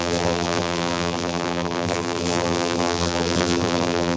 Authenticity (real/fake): fake